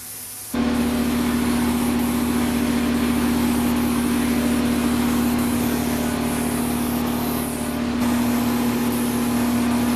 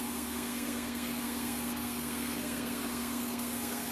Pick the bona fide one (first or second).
first